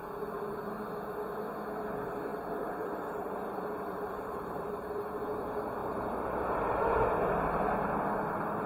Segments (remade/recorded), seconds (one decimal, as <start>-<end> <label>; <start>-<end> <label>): 0.0-2.3 recorded; 2.3-5.2 remade; 5.2-5.8 recorded; 5.8-6.8 remade; 6.8-8.7 recorded